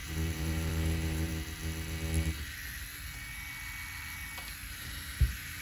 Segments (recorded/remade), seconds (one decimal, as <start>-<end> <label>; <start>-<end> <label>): 0.0-1.3 remade; 1.3-4.7 recorded; 4.7-5.6 remade